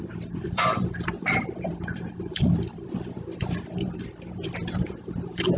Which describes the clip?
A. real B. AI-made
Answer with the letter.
B